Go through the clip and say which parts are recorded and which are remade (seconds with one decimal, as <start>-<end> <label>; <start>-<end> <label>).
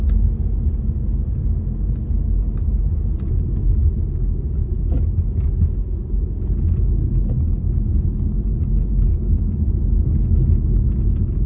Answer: 0.0-9.1 recorded; 9.1-9.7 remade; 9.7-11.5 recorded